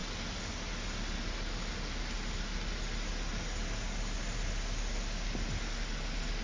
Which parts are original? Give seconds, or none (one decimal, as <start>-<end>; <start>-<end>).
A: 0.0-6.4